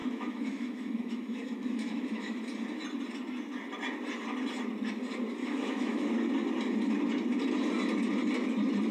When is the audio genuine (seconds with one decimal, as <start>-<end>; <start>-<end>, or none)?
2.4-5.4; 6.1-8.9